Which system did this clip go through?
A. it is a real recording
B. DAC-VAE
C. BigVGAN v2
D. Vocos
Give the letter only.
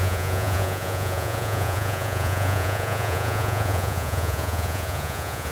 D